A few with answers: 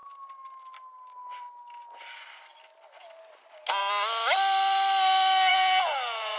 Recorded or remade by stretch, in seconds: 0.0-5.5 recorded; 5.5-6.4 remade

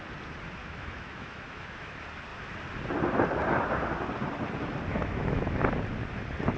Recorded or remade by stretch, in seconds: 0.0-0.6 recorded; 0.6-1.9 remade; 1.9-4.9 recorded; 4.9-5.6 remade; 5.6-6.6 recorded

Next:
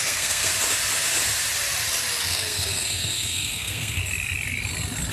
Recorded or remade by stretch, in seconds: 0.0-0.5 remade; 0.5-2.2 recorded; 2.2-4.0 remade; 4.0-5.1 recorded

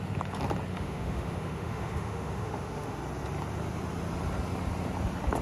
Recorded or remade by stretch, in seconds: 0.0-0.7 recorded; 0.7-3.0 remade; 3.0-5.4 recorded

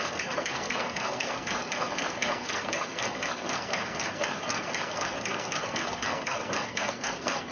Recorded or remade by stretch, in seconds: 0.0-7.5 remade

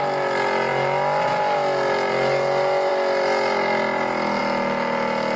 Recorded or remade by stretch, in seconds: 0.0-5.4 recorded